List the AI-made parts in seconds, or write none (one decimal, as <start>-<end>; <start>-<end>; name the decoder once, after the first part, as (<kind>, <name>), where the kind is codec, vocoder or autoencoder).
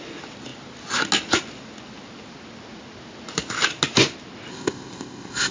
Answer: 4.5-5.5 (codec, ZipCodec)